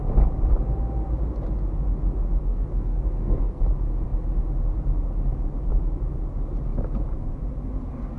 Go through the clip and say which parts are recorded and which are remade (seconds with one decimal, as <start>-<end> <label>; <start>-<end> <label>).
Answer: 0.0-2.4 recorded; 2.4-3.6 remade; 3.6-8.2 recorded